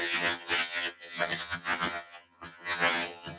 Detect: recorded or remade remade